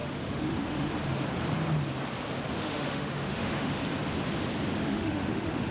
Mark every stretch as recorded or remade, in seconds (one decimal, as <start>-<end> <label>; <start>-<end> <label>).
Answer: 0.0-0.9 remade; 0.9-2.6 recorded; 2.6-3.7 remade; 3.7-4.8 recorded; 4.8-5.7 remade